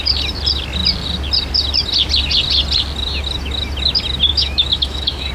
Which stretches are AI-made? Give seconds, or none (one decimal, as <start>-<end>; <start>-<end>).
4.3-5.3